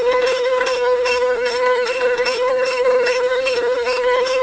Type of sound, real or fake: fake